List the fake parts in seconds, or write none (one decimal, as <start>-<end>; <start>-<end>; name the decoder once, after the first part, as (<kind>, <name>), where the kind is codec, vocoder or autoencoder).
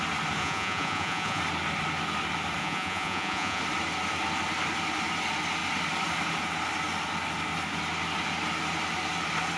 0.4-1.4 (vocoder, Vocos); 2.6-3.6